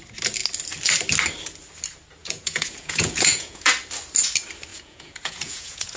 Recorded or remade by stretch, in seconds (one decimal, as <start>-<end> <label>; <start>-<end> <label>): 0.0-2.2 recorded; 2.2-3.7 remade; 3.7-4.7 recorded; 4.7-6.0 remade